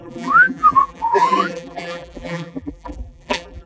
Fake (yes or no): yes